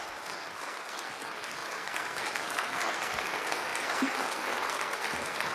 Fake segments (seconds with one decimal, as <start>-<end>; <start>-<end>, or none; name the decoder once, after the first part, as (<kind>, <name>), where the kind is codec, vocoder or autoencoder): 0.0-5.5 (codec, SNAC)